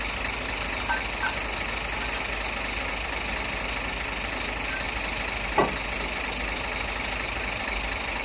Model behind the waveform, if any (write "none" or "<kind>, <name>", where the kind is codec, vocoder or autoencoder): none